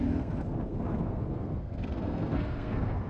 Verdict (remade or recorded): remade